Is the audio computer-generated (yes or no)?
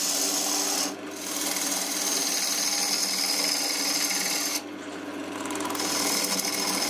no